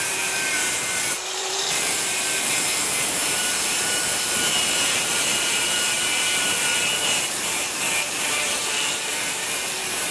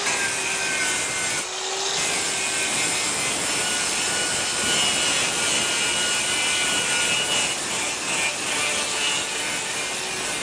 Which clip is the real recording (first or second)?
second